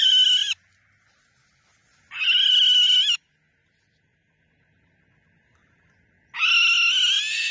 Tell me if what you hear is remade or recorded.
recorded